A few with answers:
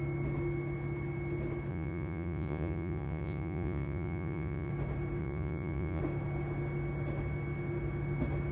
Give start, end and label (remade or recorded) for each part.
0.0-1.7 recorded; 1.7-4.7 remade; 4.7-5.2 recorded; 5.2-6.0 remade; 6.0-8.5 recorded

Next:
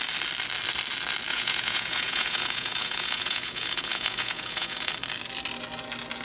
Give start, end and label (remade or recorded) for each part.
0.0-1.3 recorded; 1.3-4.9 remade; 4.9-6.2 recorded

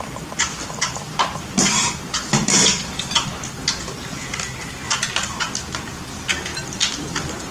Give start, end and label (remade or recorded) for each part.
0.0-7.5 recorded

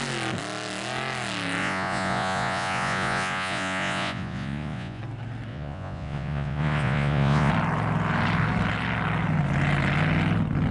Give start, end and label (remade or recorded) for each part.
0.0-1.6 recorded; 1.6-5.0 remade; 5.0-5.5 recorded; 5.5-7.5 remade; 7.5-10.7 recorded

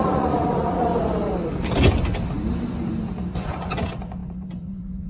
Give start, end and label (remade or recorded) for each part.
0.0-0.9 remade; 0.9-3.3 recorded; 3.3-5.1 remade

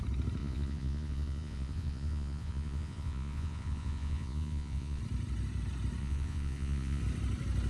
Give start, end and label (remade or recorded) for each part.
0.0-0.4 recorded; 0.4-5.0 remade; 5.0-6.0 recorded; 6.0-7.0 remade; 7.0-7.7 recorded